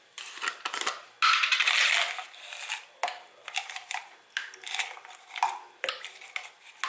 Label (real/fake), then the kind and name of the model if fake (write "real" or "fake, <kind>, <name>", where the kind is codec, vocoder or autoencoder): real